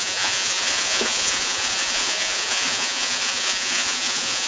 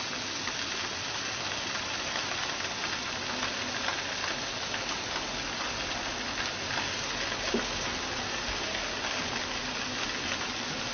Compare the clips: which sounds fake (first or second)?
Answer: first